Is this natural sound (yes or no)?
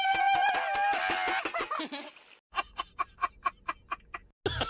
yes